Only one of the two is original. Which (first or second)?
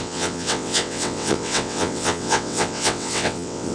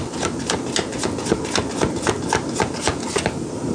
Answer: second